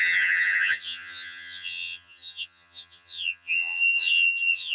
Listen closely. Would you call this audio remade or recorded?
remade